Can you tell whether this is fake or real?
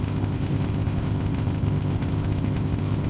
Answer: fake